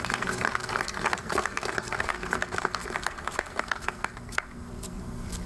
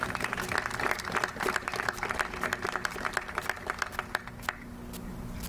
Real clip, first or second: second